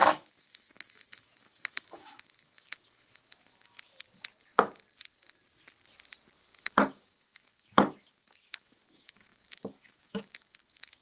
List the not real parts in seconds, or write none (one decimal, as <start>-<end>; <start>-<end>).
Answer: 0.0-3.9; 6.6-11.0